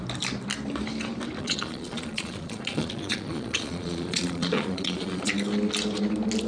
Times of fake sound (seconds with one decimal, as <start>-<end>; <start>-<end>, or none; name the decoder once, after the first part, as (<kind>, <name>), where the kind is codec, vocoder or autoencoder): 1.4-5.3 (vocoder, Vocos)